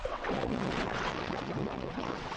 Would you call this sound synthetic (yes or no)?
yes